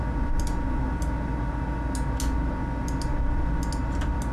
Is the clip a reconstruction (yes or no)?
no